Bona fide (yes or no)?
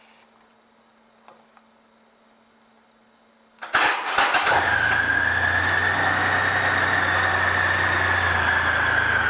yes